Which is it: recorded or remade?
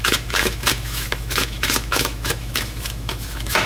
remade